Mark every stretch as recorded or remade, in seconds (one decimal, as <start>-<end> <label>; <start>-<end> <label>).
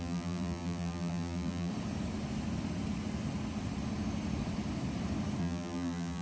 0.0-1.7 remade; 1.7-5.4 recorded; 5.4-6.2 remade